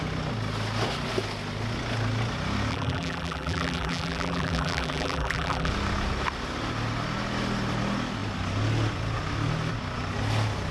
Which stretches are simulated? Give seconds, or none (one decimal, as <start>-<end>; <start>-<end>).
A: 2.7-5.7